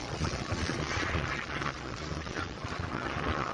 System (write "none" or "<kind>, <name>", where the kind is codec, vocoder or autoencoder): vocoder, Vocos